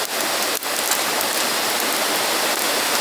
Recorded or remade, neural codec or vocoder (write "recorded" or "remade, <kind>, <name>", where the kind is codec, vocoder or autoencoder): recorded